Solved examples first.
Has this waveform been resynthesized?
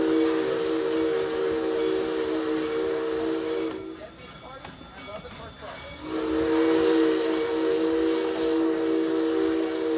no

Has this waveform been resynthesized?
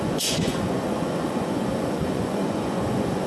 yes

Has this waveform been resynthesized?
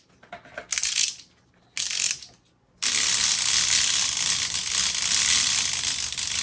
no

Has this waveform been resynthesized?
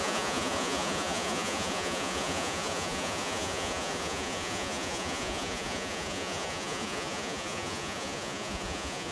yes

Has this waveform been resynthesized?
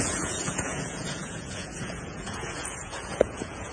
yes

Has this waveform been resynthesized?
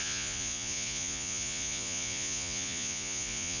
yes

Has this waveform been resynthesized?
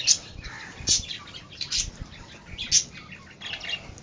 no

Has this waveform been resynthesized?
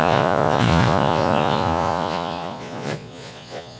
yes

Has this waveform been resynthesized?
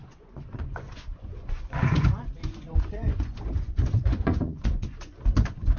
yes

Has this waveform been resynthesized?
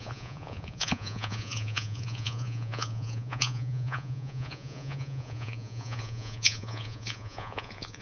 yes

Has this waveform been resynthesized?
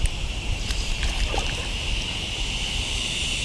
no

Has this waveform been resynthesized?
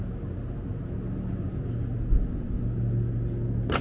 no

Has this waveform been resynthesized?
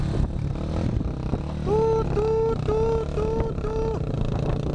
no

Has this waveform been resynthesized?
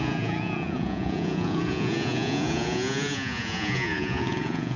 yes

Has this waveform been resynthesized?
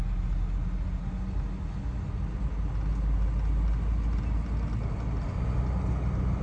no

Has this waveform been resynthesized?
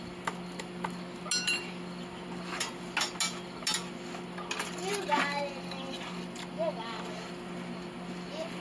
no